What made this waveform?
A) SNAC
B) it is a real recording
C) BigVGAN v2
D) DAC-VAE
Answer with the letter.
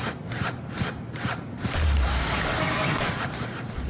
C